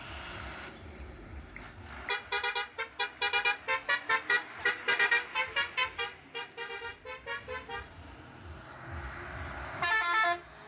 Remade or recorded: recorded